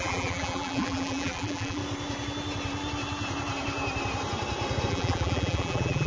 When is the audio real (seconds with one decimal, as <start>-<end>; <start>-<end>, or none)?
1.8-4.9